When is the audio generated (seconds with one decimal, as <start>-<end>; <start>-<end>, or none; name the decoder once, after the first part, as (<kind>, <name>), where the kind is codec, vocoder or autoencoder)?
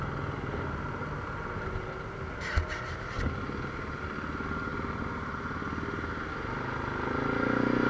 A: none